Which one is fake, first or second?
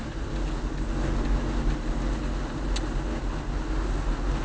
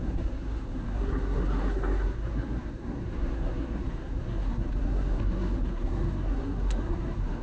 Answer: second